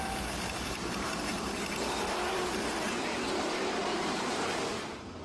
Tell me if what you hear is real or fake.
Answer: fake